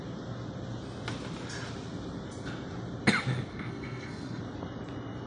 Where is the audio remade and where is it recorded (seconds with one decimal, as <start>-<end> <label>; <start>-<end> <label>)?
0.0-3.5 recorded; 3.5-4.4 remade; 4.4-5.3 recorded